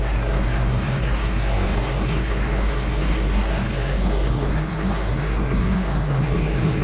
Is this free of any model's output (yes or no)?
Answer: no